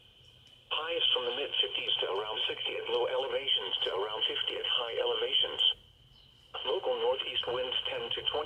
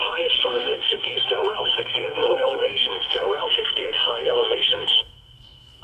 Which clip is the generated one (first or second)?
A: second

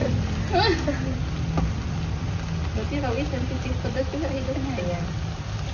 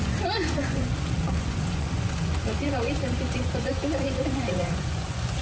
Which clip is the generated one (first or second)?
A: second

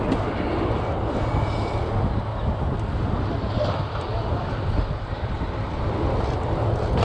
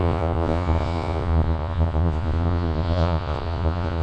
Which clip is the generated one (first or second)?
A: second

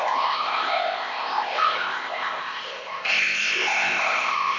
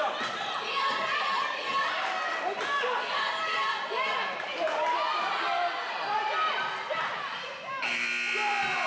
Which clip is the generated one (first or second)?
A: first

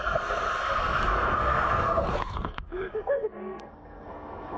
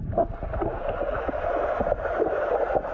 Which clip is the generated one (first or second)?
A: first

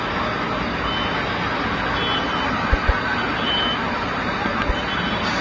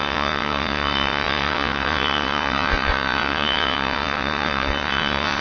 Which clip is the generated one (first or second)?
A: second